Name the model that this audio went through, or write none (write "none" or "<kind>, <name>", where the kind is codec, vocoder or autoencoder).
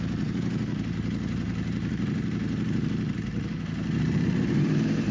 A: vocoder, BigVGAN v2